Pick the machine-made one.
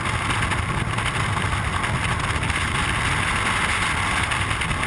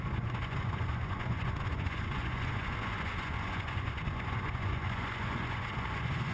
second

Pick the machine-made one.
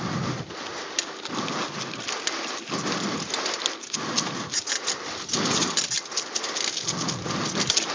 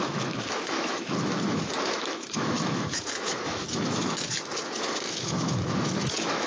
second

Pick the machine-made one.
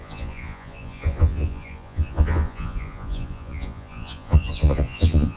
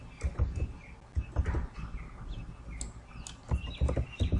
first